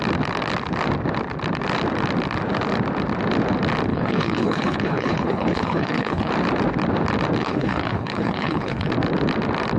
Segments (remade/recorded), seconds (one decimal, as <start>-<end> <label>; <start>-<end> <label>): 0.0-3.9 recorded; 3.9-6.3 remade; 6.3-7.4 recorded; 7.4-8.9 remade; 8.9-9.8 recorded